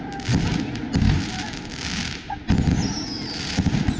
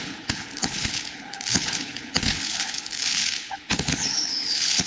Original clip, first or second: first